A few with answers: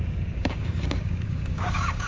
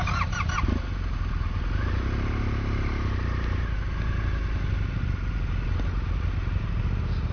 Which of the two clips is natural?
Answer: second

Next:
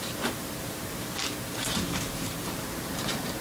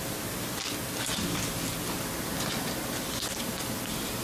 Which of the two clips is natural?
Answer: second